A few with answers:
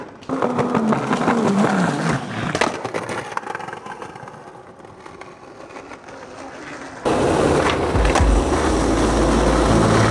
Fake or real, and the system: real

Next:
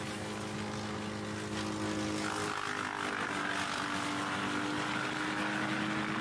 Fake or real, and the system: real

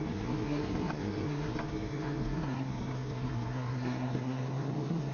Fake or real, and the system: fake, codec, SNAC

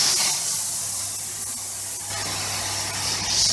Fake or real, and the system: real